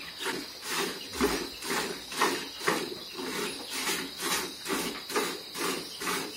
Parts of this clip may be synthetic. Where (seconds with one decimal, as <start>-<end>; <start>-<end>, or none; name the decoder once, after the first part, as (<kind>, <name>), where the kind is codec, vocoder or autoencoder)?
none